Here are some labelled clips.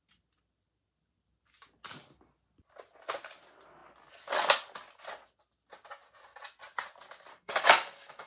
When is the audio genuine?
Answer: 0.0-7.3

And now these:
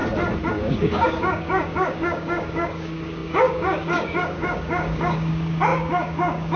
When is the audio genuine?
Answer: 0.0-0.5

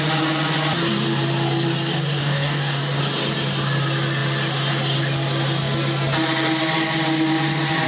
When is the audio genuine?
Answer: 0.0-2.2; 3.0-7.9

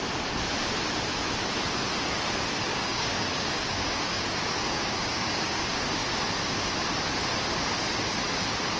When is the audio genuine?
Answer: 0.0-2.7; 5.6-8.8

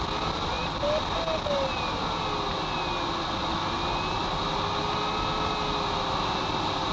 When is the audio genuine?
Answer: 0.0-6.9

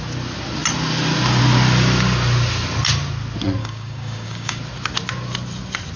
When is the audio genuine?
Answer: 0.0-3.6; 4.6-6.0

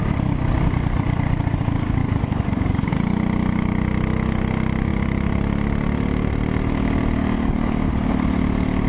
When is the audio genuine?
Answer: 0.0-2.0; 2.9-7.2; 7.9-8.9

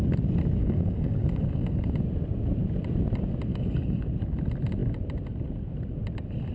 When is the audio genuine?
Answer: 0.0-0.6; 1.9-3.5; 4.1-6.5